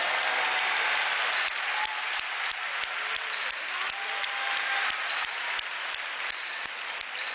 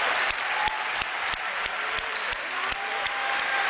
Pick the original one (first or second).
first